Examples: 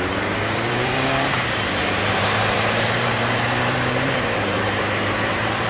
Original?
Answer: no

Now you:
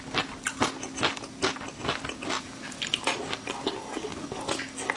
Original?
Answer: yes